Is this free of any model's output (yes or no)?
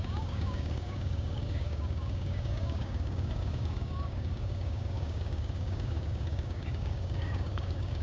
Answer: no